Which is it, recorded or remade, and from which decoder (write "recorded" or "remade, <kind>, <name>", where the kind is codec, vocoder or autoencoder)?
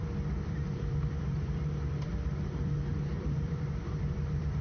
remade, vocoder, BigVGAN v2